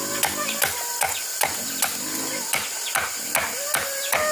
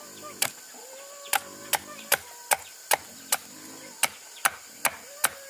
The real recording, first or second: second